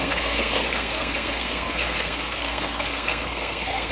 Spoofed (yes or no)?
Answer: yes